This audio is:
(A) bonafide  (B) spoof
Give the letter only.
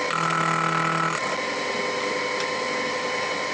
A